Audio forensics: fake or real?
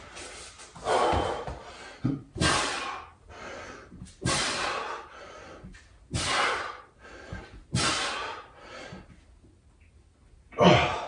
real